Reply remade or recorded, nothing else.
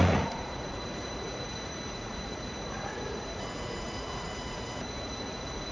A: remade